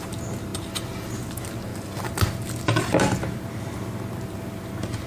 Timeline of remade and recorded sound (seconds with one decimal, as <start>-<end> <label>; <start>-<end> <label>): 0.0-5.1 recorded